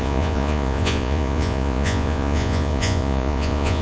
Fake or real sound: fake